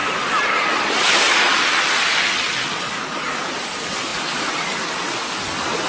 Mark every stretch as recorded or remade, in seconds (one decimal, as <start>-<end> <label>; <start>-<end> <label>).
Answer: 0.0-2.3 remade; 2.3-5.9 recorded